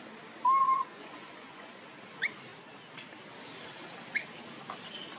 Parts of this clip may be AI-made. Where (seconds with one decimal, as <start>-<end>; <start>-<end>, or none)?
0.6-1.8